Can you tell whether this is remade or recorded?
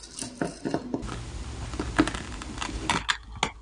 recorded